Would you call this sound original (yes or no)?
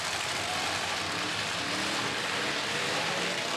yes